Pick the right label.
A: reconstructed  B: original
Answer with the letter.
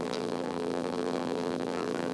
A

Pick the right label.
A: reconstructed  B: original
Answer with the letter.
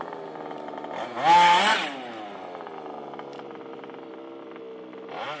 B